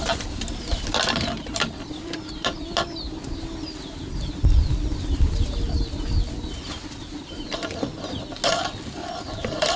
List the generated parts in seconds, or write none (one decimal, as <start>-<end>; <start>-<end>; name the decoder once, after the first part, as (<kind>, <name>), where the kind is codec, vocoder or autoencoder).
0.0-2.6 (vocoder, BigVGAN v2); 6.8-8.1; 9.0-9.8